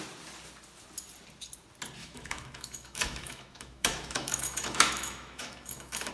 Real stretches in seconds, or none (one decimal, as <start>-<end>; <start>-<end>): 0.0-2.0